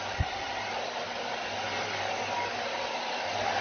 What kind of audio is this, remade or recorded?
recorded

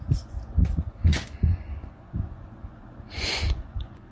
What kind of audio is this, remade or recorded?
remade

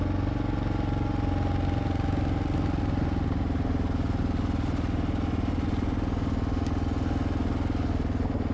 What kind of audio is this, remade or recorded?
recorded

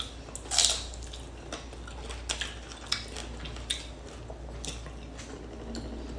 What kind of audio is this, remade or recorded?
recorded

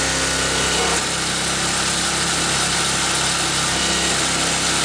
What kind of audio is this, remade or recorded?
recorded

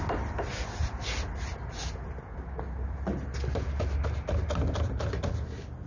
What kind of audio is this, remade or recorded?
recorded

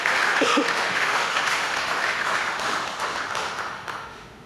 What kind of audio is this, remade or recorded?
remade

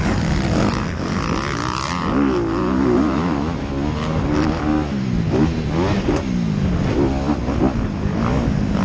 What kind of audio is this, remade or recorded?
recorded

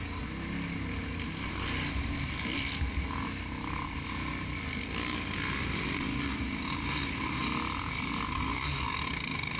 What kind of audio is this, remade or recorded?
recorded